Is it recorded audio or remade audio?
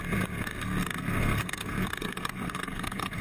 remade